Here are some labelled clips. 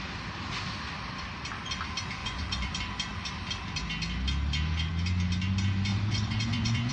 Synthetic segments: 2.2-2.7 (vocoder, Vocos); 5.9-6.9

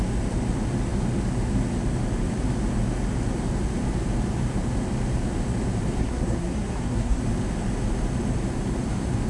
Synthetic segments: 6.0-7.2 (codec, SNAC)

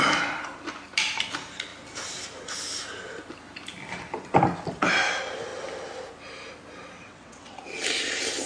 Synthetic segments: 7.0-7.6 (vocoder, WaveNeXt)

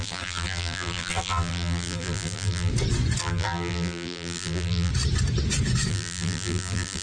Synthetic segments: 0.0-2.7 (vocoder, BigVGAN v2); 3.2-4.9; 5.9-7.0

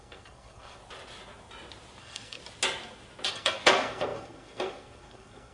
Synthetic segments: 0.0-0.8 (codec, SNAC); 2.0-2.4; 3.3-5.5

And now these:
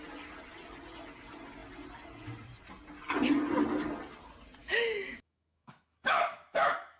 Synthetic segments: 4.6-7.0 (autoencoder, DAC-VAE)

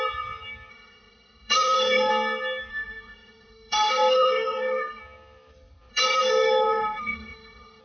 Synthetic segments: 0.7-2.1 (autoencoder, DAC-VAE); 2.7-5.0; 5.9-7.8